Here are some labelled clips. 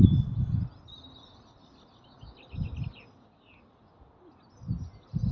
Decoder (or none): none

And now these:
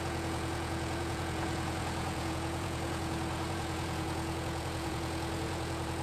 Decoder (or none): vocoder, Vocos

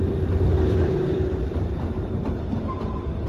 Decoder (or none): vocoder, BigVGAN v2